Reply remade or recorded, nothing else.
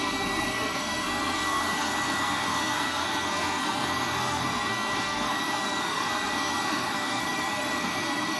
remade